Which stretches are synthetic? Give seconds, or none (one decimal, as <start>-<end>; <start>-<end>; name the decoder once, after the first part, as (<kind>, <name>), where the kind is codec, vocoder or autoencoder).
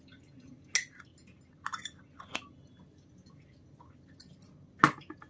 none